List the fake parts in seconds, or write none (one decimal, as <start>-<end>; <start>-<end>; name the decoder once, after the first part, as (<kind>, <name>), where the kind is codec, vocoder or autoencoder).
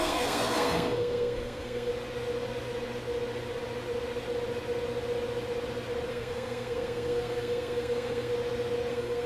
0.0-1.9 (codec, SNAC); 6.1-8.3; 8.9-9.3